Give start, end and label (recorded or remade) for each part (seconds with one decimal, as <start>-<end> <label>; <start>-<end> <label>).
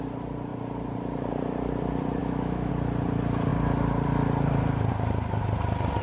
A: 0.0-2.2 recorded; 2.2-2.7 remade; 2.7-6.0 recorded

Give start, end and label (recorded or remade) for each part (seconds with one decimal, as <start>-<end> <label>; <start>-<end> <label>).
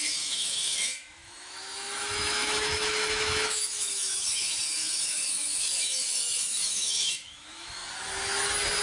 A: 0.0-7.8 remade; 7.8-8.8 recorded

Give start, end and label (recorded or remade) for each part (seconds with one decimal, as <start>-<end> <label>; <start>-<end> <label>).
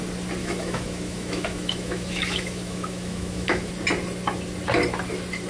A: 0.0-0.4 recorded; 0.4-3.7 remade; 3.7-5.5 recorded